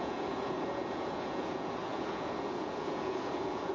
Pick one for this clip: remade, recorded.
remade